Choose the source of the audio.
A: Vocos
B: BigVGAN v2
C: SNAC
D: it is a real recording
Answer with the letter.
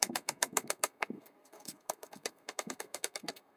C